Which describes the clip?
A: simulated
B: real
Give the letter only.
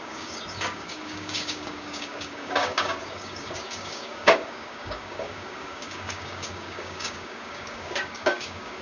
A